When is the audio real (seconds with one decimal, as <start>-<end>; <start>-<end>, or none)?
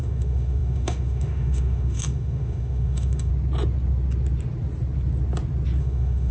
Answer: 3.3-5.8